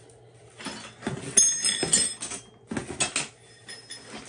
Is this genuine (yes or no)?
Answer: yes